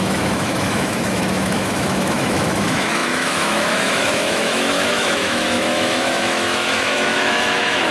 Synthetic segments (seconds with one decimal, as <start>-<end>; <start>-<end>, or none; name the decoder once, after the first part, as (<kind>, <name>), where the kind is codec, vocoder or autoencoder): 0.0-7.9 (autoencoder, DAC-VAE)